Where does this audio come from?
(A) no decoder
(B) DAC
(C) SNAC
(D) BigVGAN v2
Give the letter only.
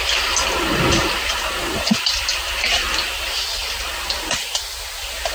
A